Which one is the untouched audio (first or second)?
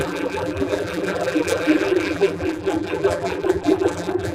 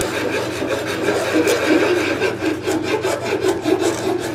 second